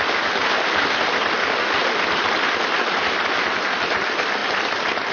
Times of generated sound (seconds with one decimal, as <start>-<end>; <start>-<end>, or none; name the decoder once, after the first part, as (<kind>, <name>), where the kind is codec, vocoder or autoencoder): none